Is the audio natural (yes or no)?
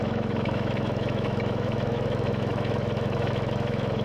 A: no